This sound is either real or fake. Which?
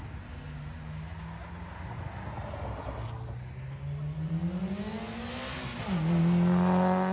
real